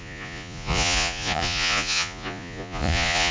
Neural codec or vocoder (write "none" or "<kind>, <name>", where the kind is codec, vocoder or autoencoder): vocoder, Vocos